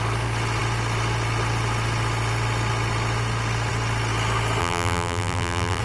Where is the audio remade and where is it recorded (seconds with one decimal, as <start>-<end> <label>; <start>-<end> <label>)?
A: 0.0-4.6 recorded; 4.6-5.8 remade

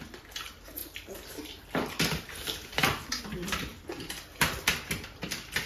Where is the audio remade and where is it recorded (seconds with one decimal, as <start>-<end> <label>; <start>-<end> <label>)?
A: 0.0-0.8 recorded; 0.8-3.2 remade; 3.2-3.7 recorded; 3.7-4.7 remade; 4.7-5.7 recorded

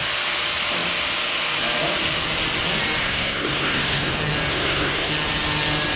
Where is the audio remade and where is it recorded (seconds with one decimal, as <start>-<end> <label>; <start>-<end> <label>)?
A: 0.0-3.0 recorded; 3.0-4.1 remade; 4.1-4.5 recorded; 4.5-5.1 remade; 5.1-6.0 recorded